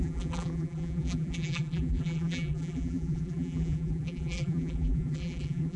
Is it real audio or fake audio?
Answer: fake